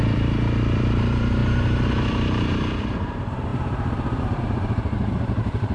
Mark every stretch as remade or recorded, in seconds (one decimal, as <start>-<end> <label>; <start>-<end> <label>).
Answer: 0.0-5.7 remade